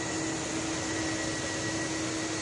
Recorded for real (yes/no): yes